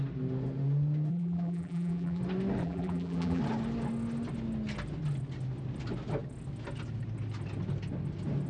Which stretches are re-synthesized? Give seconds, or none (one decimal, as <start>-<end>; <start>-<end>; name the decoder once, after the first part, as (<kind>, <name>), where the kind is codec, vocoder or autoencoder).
1.1-2.2 (vocoder, BigVGAN v2); 2.6-3.4